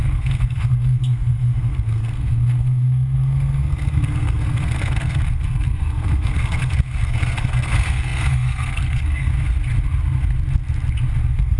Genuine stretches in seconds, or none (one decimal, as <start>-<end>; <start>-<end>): 9.3-11.2